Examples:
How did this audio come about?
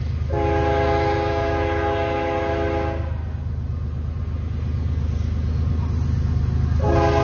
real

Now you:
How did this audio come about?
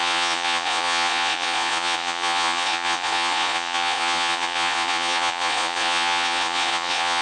fake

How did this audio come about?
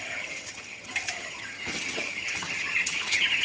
fake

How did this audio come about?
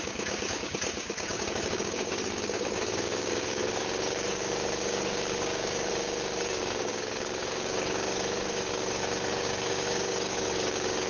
fake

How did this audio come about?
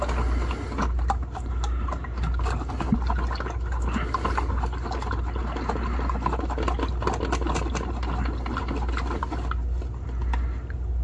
real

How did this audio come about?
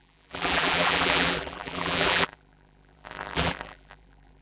fake